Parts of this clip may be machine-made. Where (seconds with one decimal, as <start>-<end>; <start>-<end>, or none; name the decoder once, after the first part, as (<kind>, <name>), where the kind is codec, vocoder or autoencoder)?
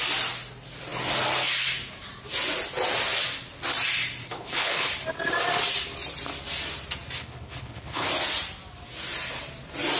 4.2-4.9 (codec, HILCodec); 7.2-8.1